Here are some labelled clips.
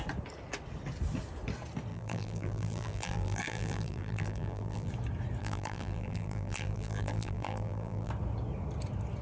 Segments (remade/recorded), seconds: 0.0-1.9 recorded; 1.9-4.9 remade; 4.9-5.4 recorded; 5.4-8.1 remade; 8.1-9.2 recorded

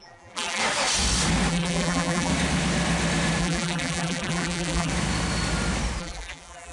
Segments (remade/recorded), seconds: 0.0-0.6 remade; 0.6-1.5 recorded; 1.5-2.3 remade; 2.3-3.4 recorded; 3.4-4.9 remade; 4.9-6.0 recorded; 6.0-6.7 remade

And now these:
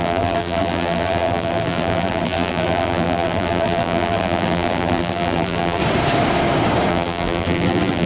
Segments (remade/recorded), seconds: 0.0-5.8 remade; 5.8-6.9 recorded; 6.9-8.1 remade

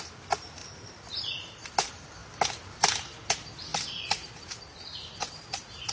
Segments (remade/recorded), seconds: 0.0-0.6 recorded; 0.6-1.7 remade; 1.7-3.7 recorded; 3.7-5.1 remade; 5.1-5.9 recorded